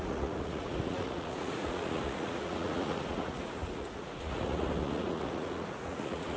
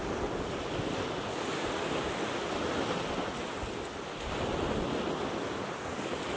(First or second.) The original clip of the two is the second